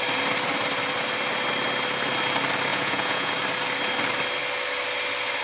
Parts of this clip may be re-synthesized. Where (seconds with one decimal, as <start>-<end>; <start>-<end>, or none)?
2.7-3.3